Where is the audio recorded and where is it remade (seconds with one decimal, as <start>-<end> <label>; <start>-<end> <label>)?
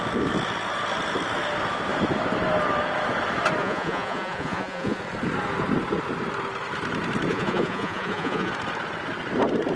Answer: 0.0-3.6 recorded; 3.6-5.0 remade; 5.0-7.3 recorded; 7.3-8.5 remade; 8.5-9.8 recorded